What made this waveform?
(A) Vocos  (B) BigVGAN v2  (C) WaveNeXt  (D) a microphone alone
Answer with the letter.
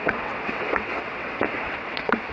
C